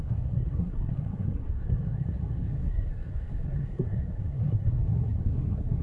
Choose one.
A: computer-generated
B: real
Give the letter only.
A